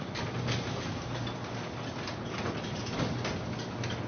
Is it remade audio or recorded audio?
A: recorded